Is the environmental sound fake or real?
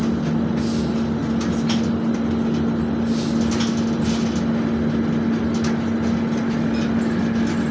real